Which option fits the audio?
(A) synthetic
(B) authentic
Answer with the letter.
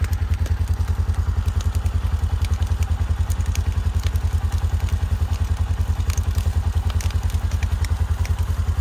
B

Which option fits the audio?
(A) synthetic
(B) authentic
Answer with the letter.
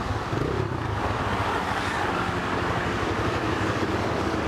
A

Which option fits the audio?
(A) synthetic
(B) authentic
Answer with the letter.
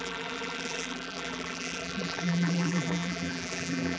A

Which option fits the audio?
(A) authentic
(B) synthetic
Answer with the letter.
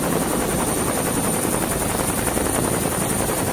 B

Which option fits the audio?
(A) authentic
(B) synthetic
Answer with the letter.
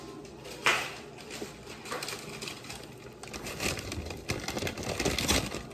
A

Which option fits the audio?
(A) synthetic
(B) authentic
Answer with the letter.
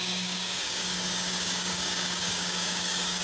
A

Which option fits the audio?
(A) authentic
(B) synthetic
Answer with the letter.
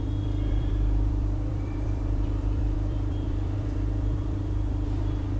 B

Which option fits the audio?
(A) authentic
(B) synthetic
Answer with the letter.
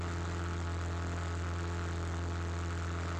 A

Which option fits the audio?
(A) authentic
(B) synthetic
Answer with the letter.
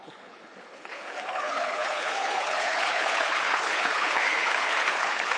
B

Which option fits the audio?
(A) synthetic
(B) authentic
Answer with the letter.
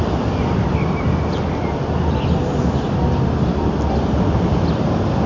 B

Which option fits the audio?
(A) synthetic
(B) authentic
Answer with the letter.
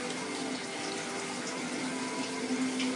B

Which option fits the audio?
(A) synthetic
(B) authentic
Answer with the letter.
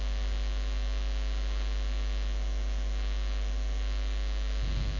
B